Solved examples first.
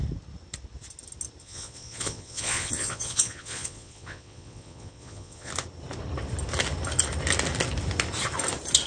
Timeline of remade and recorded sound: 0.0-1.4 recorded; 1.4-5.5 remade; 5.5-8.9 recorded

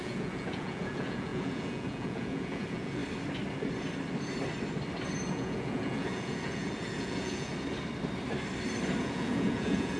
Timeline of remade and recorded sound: 0.0-3.0 remade; 3.0-5.3 recorded; 5.3-7.5 remade; 7.5-9.0 recorded; 9.0-10.0 remade

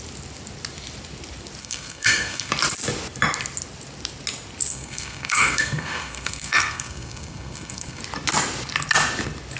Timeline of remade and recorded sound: 0.0-1.6 recorded; 1.6-2.5 remade; 2.5-4.7 recorded; 4.7-8.0 remade; 8.0-9.6 recorded

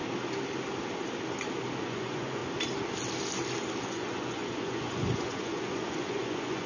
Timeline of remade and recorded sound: 0.0-1.8 recorded; 1.8-2.4 remade; 2.4-3.8 recorded; 3.8-6.7 remade

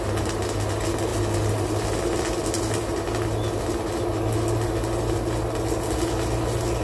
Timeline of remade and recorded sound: 0.0-6.8 recorded